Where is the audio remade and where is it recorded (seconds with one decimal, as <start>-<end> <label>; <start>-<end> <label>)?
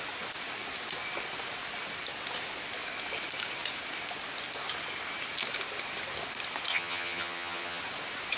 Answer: 0.0-6.7 recorded; 6.7-7.8 remade; 7.8-8.4 recorded